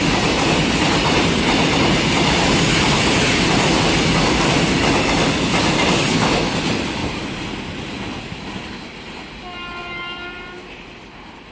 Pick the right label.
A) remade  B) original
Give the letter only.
B